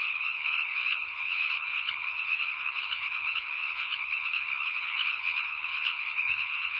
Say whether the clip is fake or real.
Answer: fake